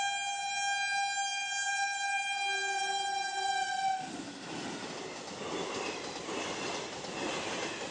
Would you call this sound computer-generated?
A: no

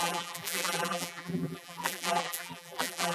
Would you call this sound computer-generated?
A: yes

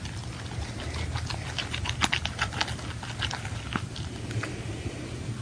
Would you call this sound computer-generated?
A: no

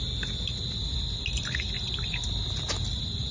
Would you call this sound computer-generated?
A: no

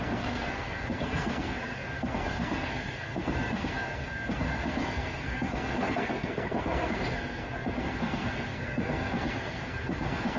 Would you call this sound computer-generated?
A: yes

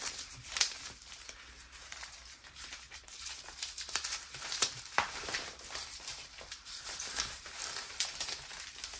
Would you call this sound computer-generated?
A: yes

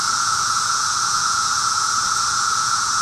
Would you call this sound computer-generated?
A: yes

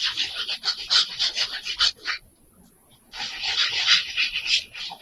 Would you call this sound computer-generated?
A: no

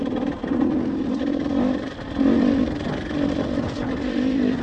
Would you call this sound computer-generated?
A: no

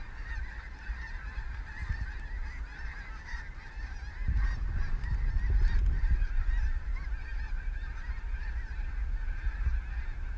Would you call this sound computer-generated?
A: no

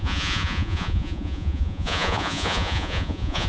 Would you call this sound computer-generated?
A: yes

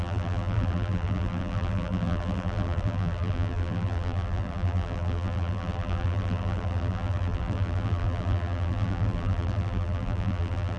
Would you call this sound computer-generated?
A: yes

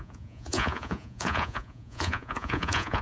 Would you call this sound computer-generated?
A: yes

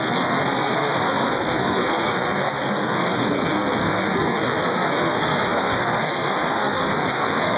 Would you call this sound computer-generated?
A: yes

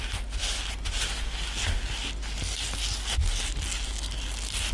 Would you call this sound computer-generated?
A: no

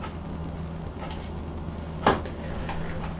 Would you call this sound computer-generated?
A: no